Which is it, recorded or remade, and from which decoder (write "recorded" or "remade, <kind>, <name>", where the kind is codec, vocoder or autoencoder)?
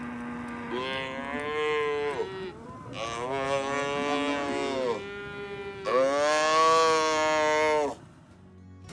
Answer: recorded